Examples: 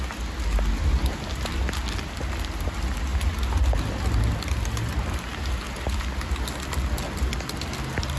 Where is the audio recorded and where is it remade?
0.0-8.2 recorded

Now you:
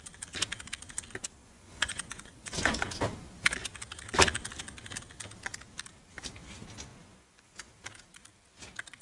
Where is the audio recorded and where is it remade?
0.0-1.4 recorded; 1.4-3.0 remade; 3.0-6.9 recorded; 6.9-7.7 remade; 7.7-9.0 recorded

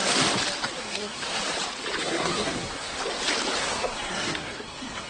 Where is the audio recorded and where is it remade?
0.0-0.8 recorded; 0.8-1.4 remade; 1.4-2.0 recorded; 2.0-2.9 remade; 2.9-3.6 recorded; 3.6-5.1 remade

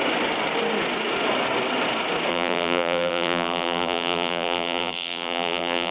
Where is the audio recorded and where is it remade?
0.0-2.3 recorded; 2.3-5.9 remade

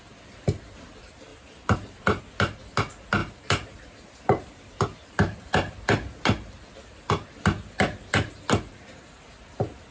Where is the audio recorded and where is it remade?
0.0-1.3 recorded; 1.3-2.2 remade; 2.2-3.2 recorded; 3.2-4.5 remade; 4.5-9.9 recorded

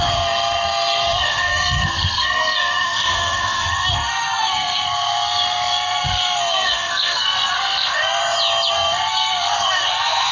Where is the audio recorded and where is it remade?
0.0-8.2 remade; 8.2-8.7 recorded; 8.7-10.3 remade

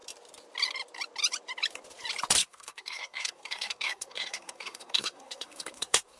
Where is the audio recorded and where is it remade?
0.0-2.4 recorded; 2.4-6.2 remade

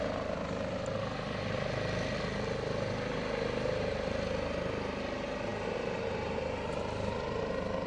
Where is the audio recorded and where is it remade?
0.0-7.9 recorded